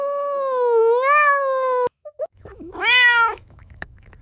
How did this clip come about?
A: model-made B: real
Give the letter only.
A